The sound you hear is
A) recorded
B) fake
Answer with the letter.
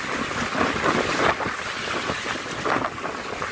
A